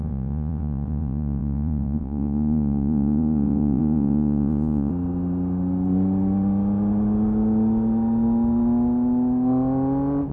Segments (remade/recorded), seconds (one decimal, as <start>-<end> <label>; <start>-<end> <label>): 0.0-4.9 remade; 4.9-10.3 recorded

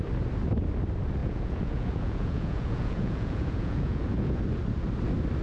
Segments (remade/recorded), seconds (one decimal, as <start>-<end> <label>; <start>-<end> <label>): 0.0-1.2 recorded; 1.2-4.4 remade; 4.4-5.4 recorded

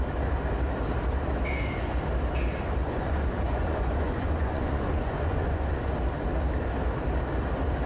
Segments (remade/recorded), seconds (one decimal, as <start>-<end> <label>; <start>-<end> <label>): 0.0-2.8 recorded; 2.8-5.9 remade; 5.9-7.9 recorded

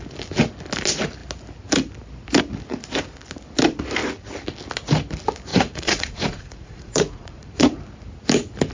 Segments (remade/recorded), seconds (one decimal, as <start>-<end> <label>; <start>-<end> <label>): 0.0-5.5 recorded; 5.5-7.8 remade; 7.8-8.7 recorded

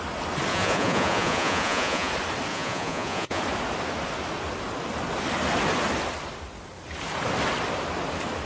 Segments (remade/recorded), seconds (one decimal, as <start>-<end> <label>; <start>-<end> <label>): 0.0-0.5 recorded; 0.5-2.1 remade; 2.1-2.5 recorded; 2.5-3.4 remade; 3.4-8.5 recorded

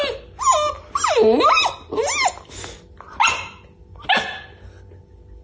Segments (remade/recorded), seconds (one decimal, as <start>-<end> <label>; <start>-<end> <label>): 0.0-5.4 recorded

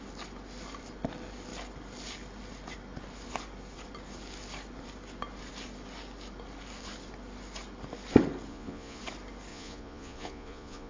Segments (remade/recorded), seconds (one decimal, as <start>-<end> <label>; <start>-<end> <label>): 0.0-8.5 recorded; 8.5-9.0 remade; 9.0-9.5 recorded; 9.5-10.9 remade